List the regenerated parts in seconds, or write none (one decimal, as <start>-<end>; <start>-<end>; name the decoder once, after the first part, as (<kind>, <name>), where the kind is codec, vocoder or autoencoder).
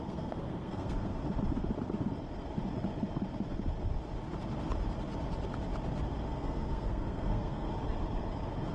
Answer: 0.0-1.2 (codec, SNAC); 6.3-7.7